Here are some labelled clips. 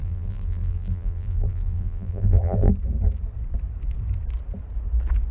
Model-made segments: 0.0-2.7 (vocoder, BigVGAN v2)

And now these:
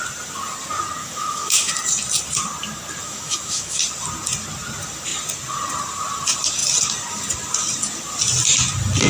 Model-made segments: 1.0-1.7 (autoencoder, DAC-VAE); 3.0-3.8